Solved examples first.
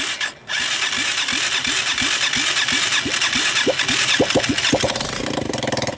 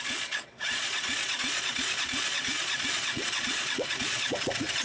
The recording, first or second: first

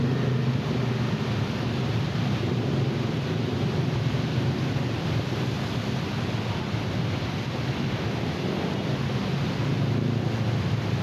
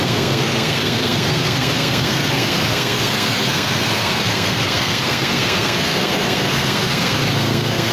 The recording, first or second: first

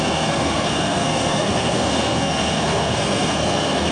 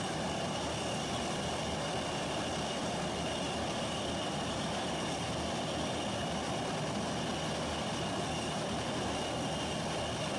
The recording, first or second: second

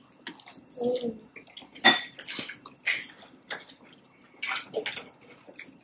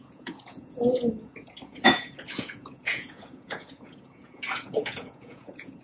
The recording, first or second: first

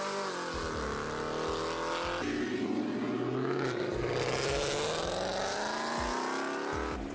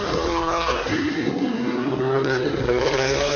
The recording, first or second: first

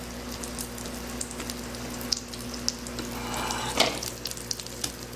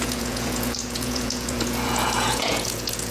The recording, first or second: first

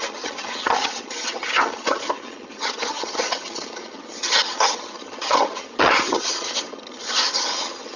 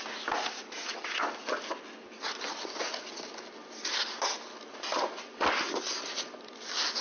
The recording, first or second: second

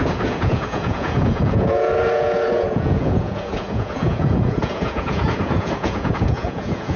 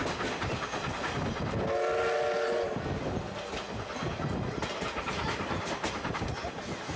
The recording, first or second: second